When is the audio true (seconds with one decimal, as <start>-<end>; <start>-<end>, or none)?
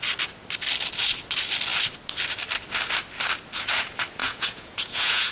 0.0-4.2